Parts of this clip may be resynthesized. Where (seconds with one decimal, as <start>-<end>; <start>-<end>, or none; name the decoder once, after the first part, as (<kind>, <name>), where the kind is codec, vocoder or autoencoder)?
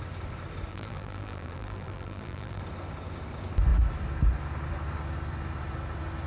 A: 0.7-2.6 (vocoder, BigVGAN v2)